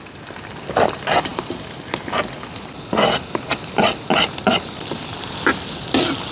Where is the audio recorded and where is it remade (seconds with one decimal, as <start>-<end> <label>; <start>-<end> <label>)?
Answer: 0.0-6.3 recorded